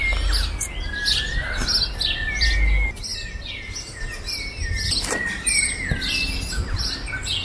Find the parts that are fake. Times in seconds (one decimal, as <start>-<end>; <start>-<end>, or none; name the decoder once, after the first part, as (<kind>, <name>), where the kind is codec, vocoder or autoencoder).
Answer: none